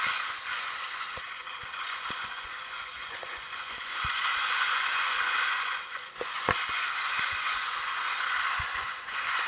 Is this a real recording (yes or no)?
no